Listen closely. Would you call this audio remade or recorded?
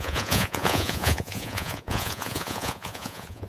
remade